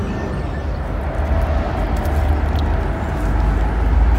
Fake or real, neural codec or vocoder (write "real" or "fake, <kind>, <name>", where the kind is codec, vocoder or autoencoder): real